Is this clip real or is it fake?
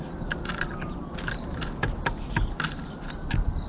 real